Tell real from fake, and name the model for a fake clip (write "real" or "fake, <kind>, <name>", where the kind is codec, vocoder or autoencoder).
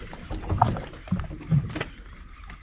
real